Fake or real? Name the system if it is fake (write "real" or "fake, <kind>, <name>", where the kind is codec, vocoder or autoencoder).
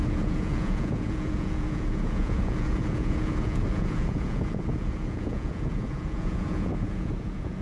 fake, vocoder, Vocos